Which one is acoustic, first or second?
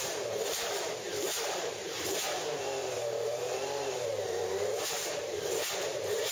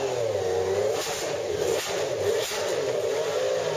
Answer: second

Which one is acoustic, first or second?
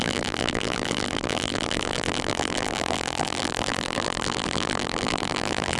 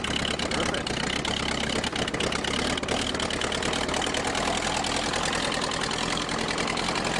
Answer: second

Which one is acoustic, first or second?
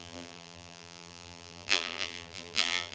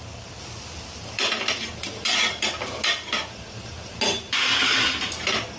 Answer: second